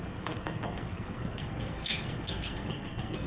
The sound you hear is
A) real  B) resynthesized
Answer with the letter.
B